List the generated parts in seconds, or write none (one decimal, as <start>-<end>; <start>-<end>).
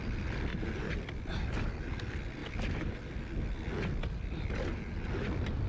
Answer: 0.5-1.3; 2.4-3.1